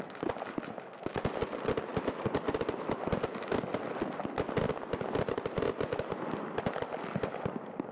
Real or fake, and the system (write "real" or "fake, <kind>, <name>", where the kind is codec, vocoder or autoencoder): real